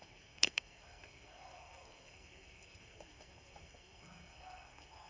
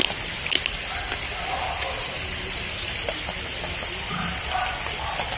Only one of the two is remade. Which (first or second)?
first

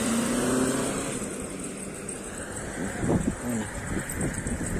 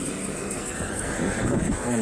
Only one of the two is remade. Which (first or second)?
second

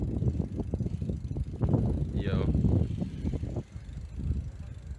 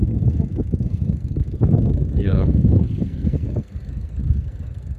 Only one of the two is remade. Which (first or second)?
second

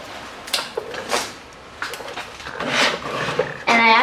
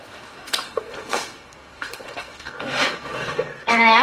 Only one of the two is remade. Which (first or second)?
second